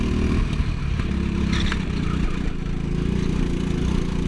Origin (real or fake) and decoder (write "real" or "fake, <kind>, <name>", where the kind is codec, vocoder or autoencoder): real